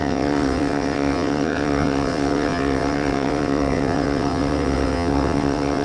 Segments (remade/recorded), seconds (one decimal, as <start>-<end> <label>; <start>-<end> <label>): 0.0-5.8 remade